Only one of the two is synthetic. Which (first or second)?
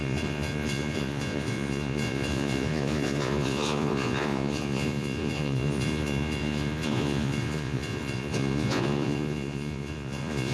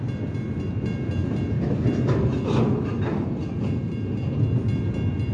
first